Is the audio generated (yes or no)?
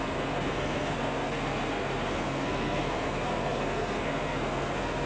yes